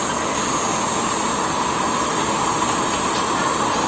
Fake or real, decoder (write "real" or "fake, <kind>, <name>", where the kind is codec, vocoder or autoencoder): real